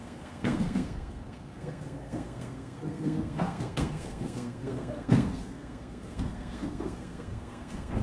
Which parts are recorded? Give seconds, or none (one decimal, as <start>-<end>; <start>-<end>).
none